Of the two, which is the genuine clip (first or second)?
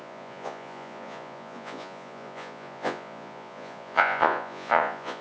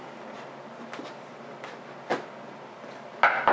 second